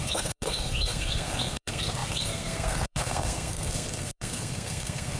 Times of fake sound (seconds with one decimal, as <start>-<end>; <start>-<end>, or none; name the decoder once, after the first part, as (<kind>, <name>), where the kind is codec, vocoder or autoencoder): 0.0-5.2 (codec, SNAC)